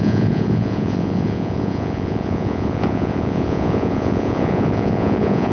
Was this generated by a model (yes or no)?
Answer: yes